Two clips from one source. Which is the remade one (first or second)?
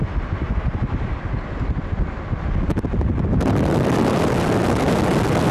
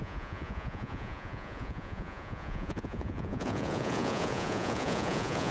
second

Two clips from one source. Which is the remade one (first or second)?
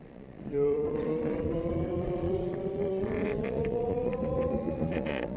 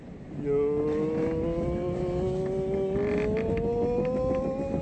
first